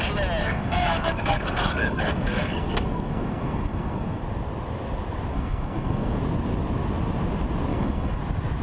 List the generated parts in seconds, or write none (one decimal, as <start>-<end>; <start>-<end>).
0.4-4.2; 5.3-6.2; 7.7-8.2